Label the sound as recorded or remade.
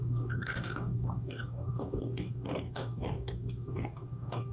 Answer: remade